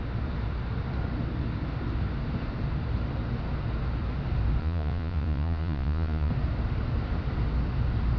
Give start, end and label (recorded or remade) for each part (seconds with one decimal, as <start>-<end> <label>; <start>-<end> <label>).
0.0-4.6 recorded; 4.6-6.3 remade; 6.3-8.2 recorded